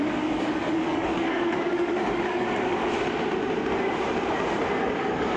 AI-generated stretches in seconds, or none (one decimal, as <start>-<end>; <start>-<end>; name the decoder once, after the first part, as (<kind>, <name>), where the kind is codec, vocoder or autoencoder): 0.0-2.8 (codec, DAC); 4.8-5.4